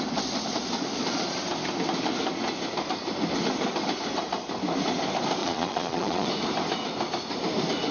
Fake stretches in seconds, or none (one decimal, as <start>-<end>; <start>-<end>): 5.4-6.3